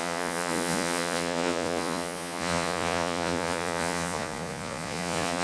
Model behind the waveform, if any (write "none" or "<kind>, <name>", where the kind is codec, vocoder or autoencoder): vocoder, Vocos